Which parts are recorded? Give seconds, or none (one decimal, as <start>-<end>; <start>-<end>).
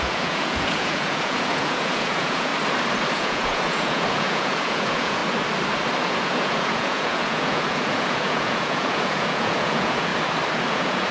2.5-3.1; 5.2-6.0; 10.1-10.7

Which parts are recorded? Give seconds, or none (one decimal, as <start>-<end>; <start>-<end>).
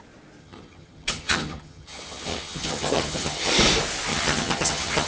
0.0-0.4; 3.5-4.1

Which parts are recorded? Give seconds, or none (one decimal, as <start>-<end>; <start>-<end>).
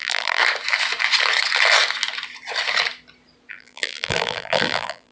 0.4-3.5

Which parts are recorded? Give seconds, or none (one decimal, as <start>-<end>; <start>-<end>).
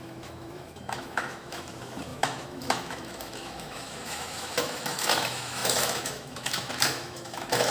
none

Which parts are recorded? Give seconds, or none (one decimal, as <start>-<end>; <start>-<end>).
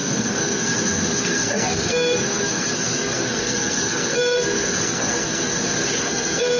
5.5-6.0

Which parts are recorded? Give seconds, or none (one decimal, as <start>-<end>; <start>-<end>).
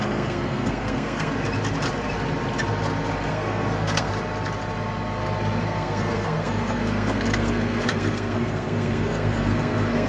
1.3-3.3; 4.1-5.6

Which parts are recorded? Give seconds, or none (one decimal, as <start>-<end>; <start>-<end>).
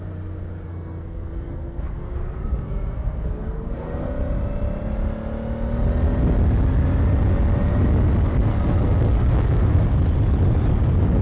0.0-0.7; 4.1-8.5; 9.8-11.2